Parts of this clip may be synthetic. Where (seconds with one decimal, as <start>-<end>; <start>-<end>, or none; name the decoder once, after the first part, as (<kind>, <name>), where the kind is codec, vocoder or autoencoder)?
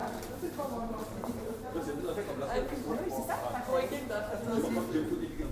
0.0-3.3 (vocoder, BigVGAN v2); 3.7-4.6